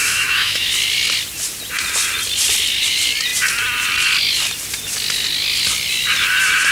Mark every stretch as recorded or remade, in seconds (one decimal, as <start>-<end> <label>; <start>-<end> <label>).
0.0-0.7 remade; 0.7-6.7 recorded